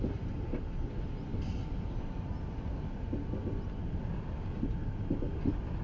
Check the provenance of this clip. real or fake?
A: real